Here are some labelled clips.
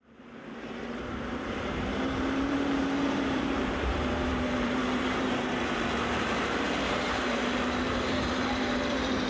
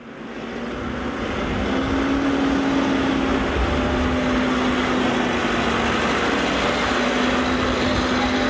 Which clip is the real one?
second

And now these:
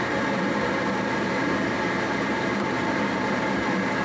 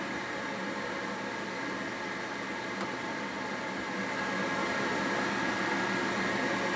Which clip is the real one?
second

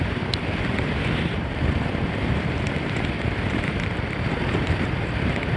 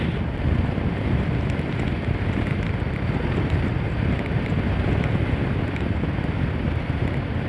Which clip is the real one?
second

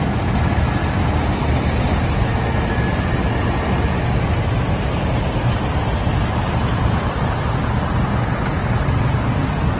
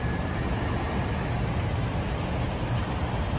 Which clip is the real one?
first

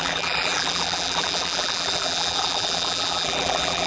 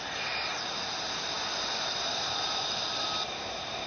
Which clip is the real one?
second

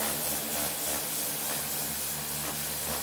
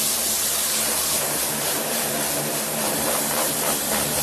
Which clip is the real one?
first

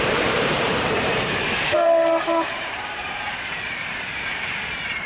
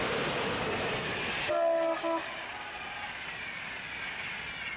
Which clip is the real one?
second